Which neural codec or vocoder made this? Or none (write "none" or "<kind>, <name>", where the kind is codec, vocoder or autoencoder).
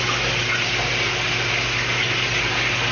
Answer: none